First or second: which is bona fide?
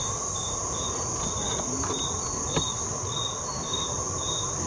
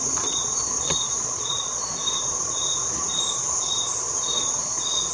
first